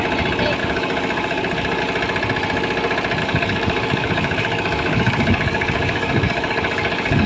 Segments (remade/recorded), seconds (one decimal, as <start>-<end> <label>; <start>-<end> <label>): 0.0-0.6 recorded; 0.6-1.8 remade; 1.8-3.2 recorded; 3.2-7.3 remade